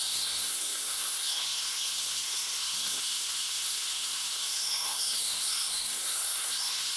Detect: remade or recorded remade